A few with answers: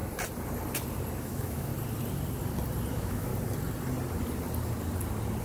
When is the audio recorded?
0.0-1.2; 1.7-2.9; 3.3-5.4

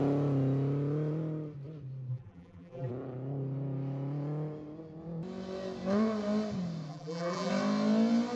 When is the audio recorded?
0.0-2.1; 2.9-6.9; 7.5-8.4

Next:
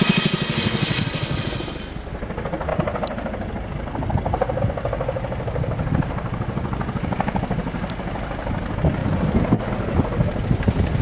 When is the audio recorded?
0.0-9.0; 9.7-11.0

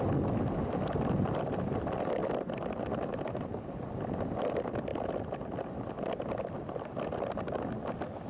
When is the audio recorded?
0.0-8.3

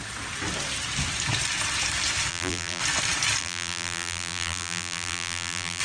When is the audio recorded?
0.0-2.3; 2.8-3.4

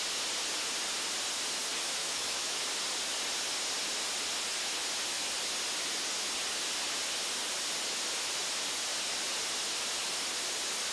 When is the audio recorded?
0.0-2.0; 2.6-10.9